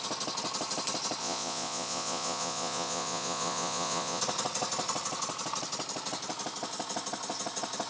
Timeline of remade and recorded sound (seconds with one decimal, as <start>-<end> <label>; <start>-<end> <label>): 0.0-1.2 recorded; 1.2-4.2 remade; 4.2-7.9 recorded